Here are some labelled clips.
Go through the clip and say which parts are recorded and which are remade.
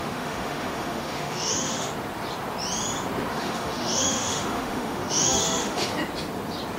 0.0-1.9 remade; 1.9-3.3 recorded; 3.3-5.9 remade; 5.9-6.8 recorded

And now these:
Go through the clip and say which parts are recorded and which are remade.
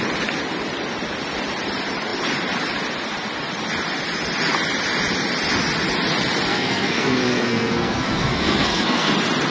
0.0-6.5 recorded; 6.5-9.1 remade; 9.1-9.5 recorded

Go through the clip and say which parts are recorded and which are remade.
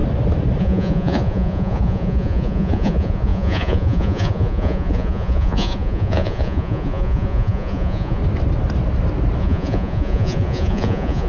0.0-0.6 recorded; 0.6-8.2 remade; 8.2-9.4 recorded; 9.4-11.3 remade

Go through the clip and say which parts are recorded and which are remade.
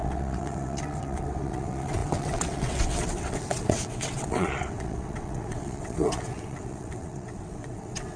0.0-8.2 remade